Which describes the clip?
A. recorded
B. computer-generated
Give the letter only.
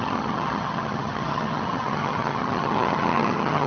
B